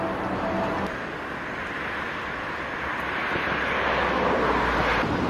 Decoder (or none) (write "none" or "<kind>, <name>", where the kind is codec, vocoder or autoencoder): none